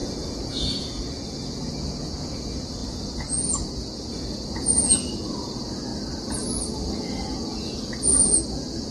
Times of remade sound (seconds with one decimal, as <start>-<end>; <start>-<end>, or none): 0.0-5.9; 8.5-8.9